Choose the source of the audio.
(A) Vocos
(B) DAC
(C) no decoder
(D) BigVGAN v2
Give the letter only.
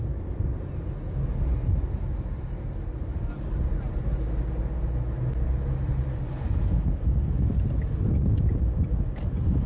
C